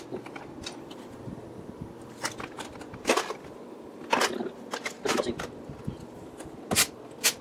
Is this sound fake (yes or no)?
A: no